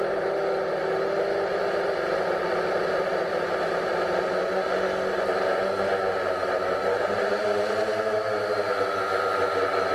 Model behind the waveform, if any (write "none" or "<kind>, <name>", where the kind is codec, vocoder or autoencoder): none